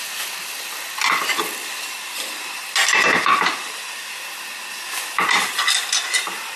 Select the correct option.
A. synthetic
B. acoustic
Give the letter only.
B